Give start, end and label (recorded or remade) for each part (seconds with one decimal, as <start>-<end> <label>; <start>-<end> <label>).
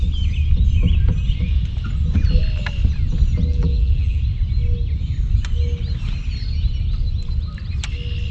0.0-3.5 recorded; 3.5-4.2 remade; 4.2-8.3 recorded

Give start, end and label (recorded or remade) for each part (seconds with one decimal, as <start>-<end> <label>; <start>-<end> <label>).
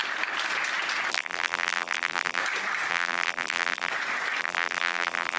0.0-1.1 recorded; 1.1-2.4 remade; 2.4-2.9 recorded; 2.9-3.9 remade; 3.9-4.4 recorded; 4.4-5.4 remade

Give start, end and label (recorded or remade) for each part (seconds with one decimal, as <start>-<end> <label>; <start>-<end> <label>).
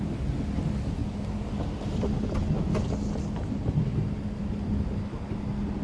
0.0-5.8 recorded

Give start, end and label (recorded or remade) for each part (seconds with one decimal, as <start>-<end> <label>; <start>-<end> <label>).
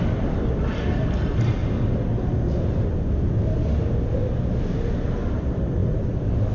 0.0-1.6 remade; 1.6-4.9 recorded; 4.9-6.5 remade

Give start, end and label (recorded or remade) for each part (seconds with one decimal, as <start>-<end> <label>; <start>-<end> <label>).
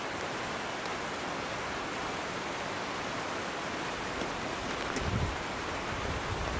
0.0-6.6 recorded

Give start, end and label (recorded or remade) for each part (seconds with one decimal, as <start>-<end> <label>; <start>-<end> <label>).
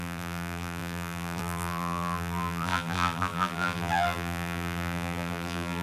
0.0-5.8 remade